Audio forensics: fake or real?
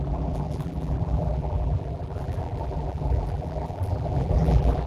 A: fake